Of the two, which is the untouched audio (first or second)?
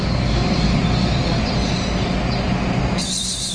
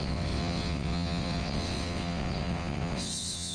first